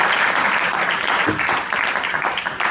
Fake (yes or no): yes